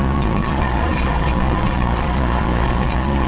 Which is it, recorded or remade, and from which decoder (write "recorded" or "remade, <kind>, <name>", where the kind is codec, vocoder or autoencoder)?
remade, vocoder, Vocos